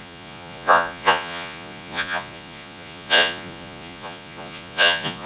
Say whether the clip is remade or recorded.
remade